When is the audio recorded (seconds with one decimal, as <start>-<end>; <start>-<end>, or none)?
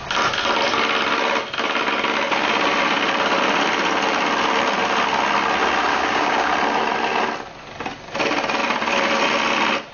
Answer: 0.0-5.9; 6.5-9.9